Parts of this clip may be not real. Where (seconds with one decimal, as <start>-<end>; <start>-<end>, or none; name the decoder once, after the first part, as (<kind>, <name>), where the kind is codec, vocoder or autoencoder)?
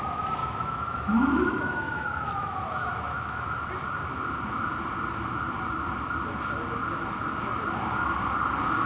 0.4-3.7 (autoencoder, DAC-VAE)